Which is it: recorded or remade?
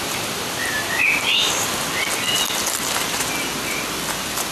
recorded